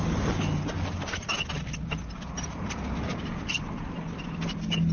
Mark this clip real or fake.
real